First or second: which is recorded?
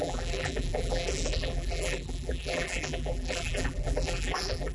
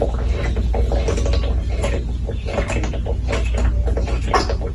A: second